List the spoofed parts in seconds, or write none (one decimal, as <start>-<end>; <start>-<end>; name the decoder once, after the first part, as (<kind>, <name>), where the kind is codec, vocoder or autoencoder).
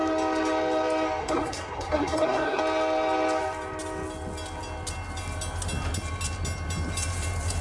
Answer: 1.2-2.6 (codec, SNAC)